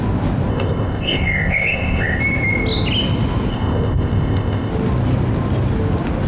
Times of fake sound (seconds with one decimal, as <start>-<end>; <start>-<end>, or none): 0.5-2.2; 3.5-4.7